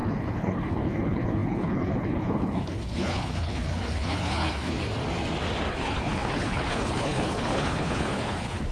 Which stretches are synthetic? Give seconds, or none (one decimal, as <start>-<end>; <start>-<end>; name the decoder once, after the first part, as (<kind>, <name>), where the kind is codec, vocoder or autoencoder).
0.0-4.8 (codec, HILCodec); 5.7-8.7